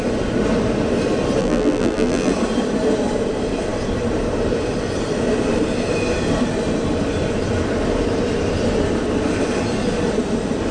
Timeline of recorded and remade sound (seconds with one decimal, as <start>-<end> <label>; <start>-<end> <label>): 0.0-1.4 recorded; 1.4-2.3 remade; 2.3-10.7 recorded